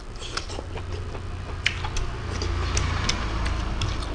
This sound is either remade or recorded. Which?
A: recorded